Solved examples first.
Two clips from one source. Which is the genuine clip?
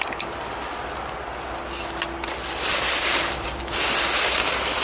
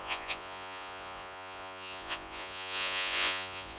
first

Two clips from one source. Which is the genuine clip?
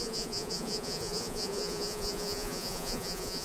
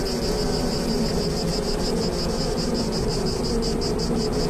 second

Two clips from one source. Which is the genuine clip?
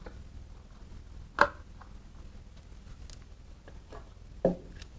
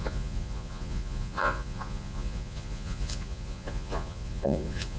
first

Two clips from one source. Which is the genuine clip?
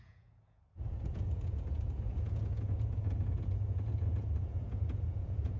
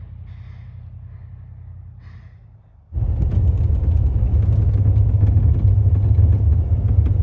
second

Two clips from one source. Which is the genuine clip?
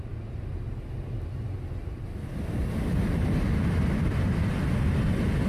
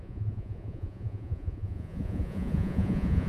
first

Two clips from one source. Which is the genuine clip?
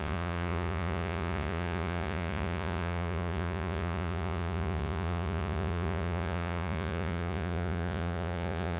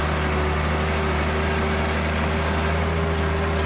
second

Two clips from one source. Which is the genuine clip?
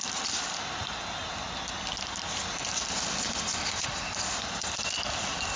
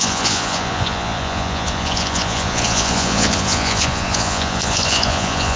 first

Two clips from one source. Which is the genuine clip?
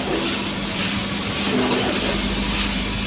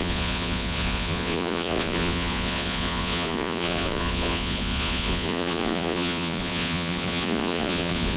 first